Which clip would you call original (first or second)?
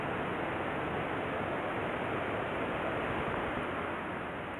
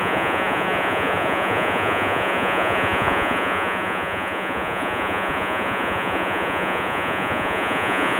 first